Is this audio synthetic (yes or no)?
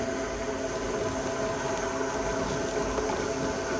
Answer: no